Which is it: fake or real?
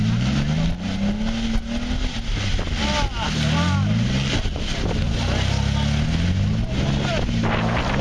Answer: real